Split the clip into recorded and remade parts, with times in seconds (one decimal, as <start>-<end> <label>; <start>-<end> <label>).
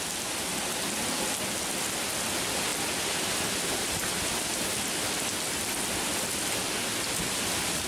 0.0-2.7 recorded; 2.7-5.6 remade; 5.6-7.9 recorded